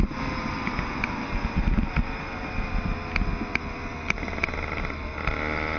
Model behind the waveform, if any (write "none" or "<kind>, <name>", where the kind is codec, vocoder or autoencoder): none